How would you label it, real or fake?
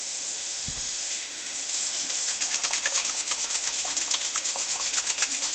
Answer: fake